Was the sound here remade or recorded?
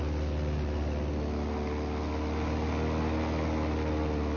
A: recorded